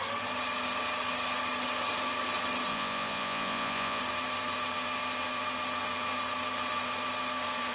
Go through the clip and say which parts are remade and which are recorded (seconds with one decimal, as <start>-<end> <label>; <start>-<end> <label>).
0.0-2.7 recorded; 2.7-4.0 remade; 4.0-7.7 recorded